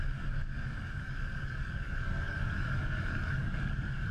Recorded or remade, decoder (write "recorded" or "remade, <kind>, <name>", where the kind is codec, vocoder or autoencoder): remade, codec, DAC